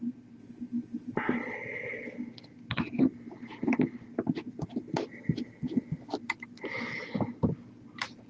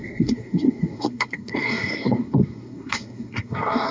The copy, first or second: second